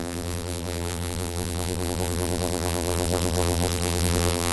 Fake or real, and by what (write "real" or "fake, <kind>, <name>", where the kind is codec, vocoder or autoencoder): fake, vocoder, BigVGAN v2